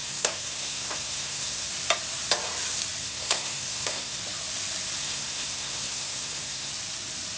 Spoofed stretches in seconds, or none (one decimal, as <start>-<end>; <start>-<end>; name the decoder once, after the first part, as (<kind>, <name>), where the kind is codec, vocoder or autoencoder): 0.0-1.7 (codec, SNAC); 3.0-4.2; 5.0-6.7

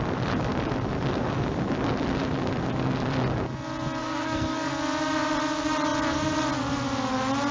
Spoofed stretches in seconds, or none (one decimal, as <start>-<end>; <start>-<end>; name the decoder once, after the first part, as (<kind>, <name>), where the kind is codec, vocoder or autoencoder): 4.0-4.7 (codec, SNAC)

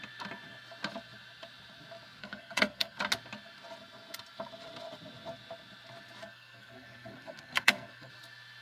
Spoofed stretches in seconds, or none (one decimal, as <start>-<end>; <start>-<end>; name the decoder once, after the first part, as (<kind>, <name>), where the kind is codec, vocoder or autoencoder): 2.2-3.0 (codec, SNAC); 6.2-8.1

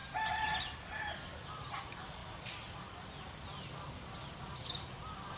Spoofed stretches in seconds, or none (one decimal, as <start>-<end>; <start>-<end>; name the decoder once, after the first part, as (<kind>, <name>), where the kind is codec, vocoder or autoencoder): none

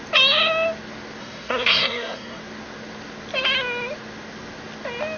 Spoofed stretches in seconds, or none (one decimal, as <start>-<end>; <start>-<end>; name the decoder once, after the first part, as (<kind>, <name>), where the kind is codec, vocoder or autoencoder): 1.2-2.4 (codec, SNAC)